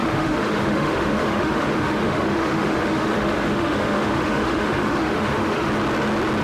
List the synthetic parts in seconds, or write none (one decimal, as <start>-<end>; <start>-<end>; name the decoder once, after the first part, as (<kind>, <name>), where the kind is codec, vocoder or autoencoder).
0.0-5.7 (autoencoder, DAC-VAE)